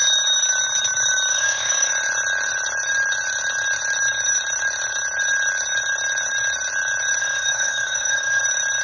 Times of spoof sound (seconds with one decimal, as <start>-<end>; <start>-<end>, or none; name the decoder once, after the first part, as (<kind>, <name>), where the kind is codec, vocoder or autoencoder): 1.3-1.9 (codec, DAC); 7.2-8.4